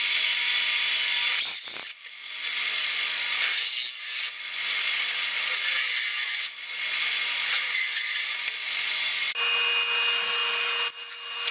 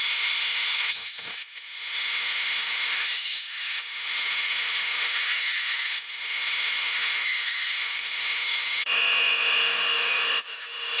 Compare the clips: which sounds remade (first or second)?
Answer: second